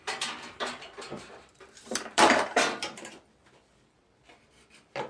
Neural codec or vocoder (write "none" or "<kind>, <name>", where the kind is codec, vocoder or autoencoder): vocoder, BigVGAN v2